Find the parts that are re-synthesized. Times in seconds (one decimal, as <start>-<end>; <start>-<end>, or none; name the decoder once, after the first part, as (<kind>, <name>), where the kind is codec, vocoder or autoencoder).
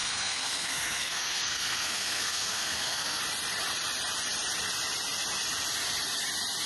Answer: 0.0-3.2 (codec, SNAC)